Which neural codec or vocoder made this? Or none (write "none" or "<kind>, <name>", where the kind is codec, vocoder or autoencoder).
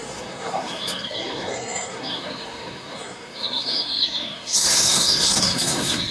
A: codec, SNAC